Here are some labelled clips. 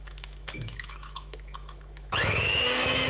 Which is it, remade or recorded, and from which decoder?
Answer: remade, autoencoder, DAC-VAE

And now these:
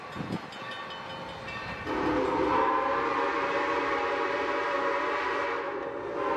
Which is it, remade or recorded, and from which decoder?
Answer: recorded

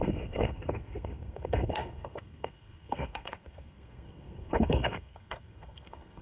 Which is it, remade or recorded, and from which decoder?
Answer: remade, codec, SNAC